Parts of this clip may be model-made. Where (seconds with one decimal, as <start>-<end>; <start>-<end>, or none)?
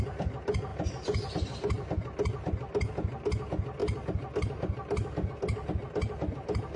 none